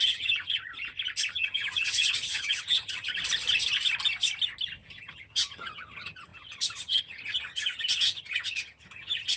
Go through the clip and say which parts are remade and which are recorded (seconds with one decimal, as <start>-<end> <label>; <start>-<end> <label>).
0.0-0.7 remade; 0.7-1.3 recorded; 1.3-3.2 remade; 3.2-5.0 recorded; 5.0-9.4 remade